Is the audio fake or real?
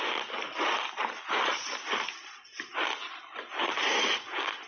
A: real